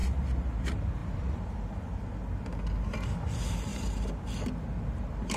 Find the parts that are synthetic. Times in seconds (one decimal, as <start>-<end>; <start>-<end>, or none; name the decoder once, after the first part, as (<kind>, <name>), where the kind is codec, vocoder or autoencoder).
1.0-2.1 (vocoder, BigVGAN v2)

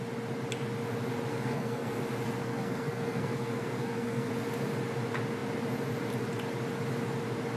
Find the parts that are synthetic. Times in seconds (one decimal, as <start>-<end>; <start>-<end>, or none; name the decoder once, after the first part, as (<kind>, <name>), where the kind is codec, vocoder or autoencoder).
1.3-2.0 (codec, SNAC); 2.4-4.3

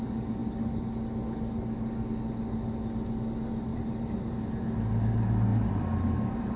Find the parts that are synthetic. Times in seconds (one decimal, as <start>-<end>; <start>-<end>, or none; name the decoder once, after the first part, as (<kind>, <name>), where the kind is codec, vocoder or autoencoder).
3.7-4.3 (vocoder, BigVGAN v2); 5.5-6.6